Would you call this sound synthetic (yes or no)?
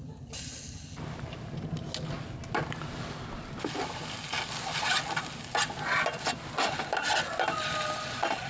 no